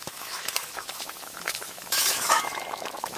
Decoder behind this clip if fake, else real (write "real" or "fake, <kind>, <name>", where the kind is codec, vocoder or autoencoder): fake, autoencoder, DAC-VAE